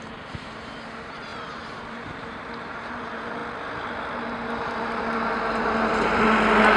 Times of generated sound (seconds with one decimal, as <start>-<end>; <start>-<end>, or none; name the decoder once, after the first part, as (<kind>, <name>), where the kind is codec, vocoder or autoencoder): 0.0-3.4 (vocoder, BigVGAN v2)